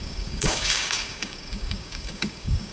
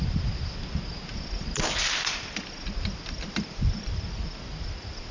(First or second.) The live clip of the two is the second